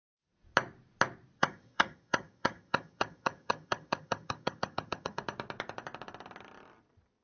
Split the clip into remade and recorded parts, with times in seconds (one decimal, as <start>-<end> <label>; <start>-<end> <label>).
0.0-1.4 recorded; 1.4-5.2 remade; 5.2-7.2 recorded